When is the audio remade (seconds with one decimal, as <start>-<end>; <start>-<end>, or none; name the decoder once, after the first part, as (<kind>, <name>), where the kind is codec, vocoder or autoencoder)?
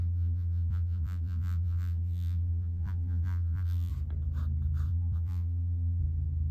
0.0-3.9 (vocoder, BigVGAN v2); 4.9-6.0